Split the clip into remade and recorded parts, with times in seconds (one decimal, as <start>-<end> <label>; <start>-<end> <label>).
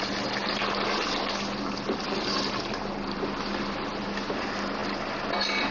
0.0-5.7 recorded